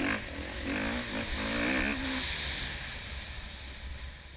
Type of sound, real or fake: real